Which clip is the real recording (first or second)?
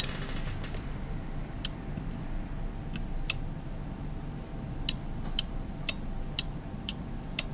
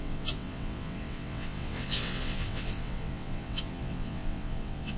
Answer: first